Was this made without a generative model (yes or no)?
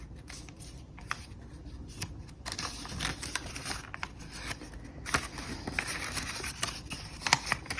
yes